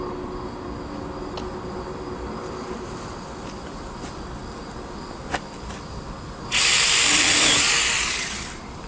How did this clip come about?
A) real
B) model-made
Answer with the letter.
A